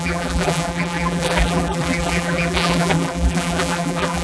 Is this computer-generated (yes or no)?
yes